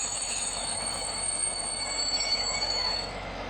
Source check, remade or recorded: remade